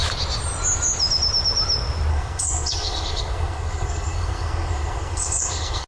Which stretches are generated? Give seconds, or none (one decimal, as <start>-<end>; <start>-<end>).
2.1-5.9